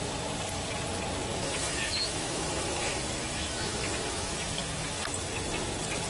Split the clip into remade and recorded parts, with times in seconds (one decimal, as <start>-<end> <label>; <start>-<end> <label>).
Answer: 0.0-1.3 recorded; 1.3-5.0 remade; 5.0-6.1 recorded